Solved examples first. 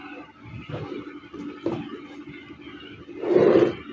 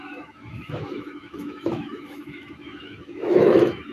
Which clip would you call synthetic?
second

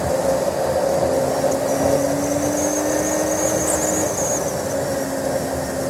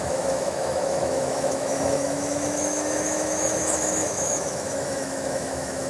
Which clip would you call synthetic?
second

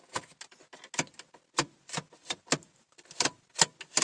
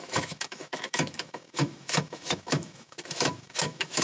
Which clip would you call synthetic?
second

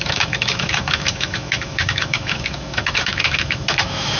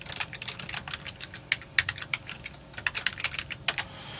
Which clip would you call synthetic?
first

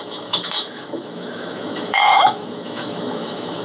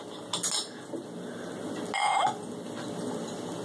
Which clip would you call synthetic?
first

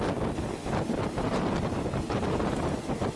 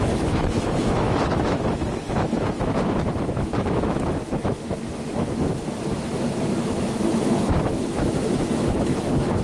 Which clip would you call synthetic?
second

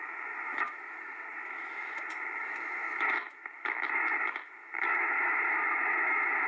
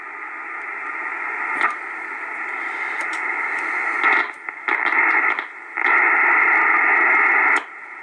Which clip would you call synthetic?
first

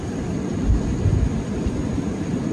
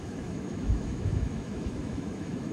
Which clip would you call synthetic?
second